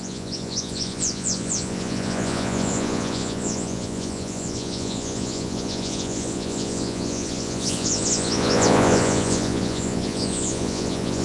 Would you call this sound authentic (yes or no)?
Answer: no